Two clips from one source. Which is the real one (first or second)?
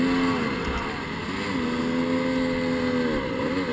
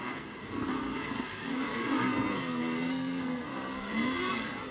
first